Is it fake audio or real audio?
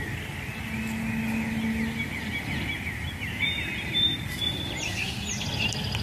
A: real